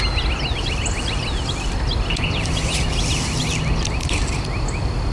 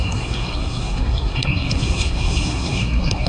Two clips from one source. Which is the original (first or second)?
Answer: first